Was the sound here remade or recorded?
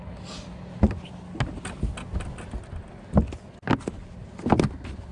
recorded